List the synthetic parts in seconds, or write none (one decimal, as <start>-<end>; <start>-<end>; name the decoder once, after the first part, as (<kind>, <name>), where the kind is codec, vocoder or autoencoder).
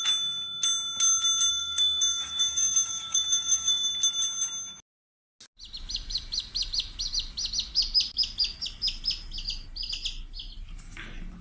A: 1.5-3.9 (codec, DAC)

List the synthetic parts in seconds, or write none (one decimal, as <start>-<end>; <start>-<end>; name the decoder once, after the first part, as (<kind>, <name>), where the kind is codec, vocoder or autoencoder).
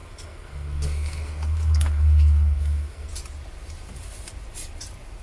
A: 0.0-3.1 (codec, SNAC)